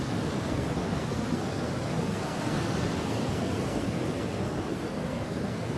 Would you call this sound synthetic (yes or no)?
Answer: yes